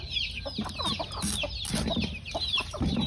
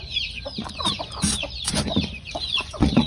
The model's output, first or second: second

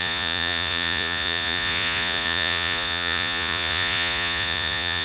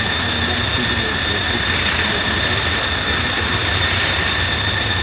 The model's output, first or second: first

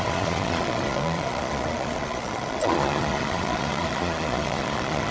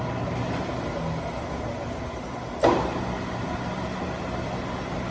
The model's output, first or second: first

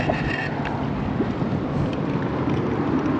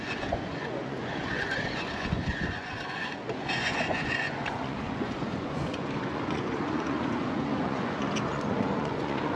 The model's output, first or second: second